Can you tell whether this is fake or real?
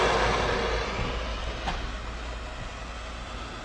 real